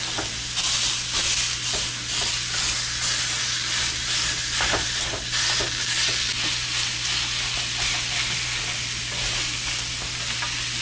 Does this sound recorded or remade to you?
recorded